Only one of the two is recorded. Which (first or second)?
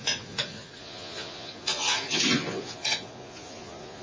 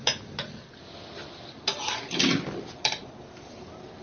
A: second